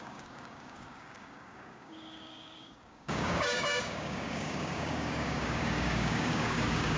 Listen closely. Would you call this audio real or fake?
fake